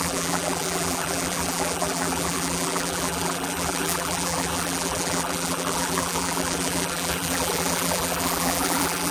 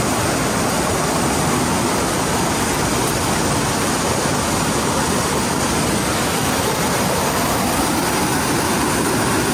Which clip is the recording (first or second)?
second